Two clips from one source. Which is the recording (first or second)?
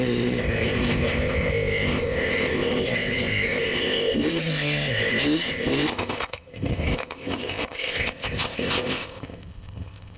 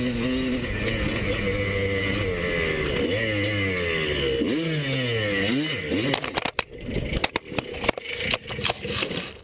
second